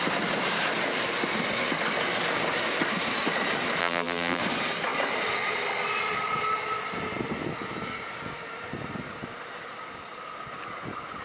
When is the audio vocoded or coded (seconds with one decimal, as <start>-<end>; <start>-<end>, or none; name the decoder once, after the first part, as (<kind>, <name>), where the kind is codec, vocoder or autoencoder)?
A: 3.8-4.4 (vocoder, BigVGAN v2)